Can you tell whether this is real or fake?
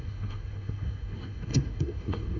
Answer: fake